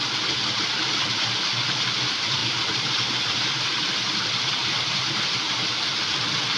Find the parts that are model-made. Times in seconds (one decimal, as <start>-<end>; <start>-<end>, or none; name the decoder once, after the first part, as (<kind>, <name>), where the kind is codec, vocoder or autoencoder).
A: 2.4-3.8 (vocoder, BigVGAN v2); 4.6-5.7

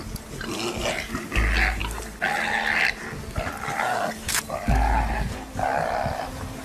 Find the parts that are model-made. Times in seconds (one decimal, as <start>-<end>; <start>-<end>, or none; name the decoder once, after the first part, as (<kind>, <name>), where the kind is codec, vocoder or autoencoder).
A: none